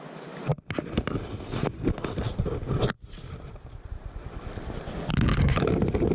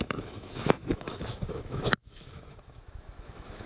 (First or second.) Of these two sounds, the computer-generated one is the second